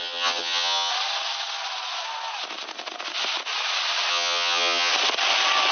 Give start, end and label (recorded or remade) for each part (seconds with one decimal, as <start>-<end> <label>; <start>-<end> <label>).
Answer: 0.0-0.9 remade; 0.9-4.1 recorded; 4.1-4.9 remade; 4.9-5.7 recorded